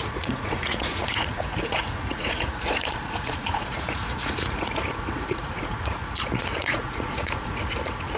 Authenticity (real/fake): fake